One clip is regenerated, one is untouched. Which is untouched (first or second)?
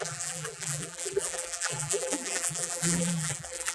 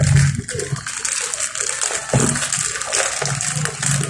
second